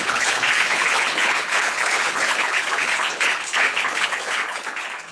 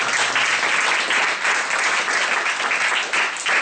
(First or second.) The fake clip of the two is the first